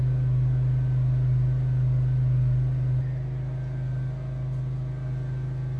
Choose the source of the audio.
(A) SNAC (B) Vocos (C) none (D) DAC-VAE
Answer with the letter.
C